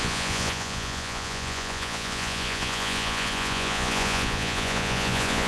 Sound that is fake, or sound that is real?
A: fake